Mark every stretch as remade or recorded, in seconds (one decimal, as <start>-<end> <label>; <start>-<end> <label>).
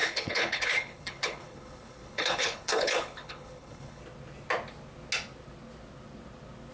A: 0.0-4.0 remade; 4.0-6.7 recorded